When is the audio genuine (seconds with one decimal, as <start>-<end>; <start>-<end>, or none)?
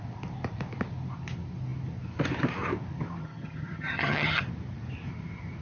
0.0-3.2; 4.4-5.6